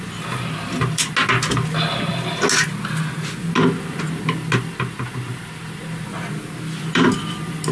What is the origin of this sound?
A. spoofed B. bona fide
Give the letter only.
B